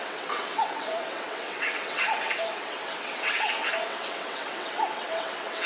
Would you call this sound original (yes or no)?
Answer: no